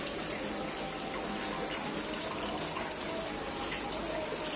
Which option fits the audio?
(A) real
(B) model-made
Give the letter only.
A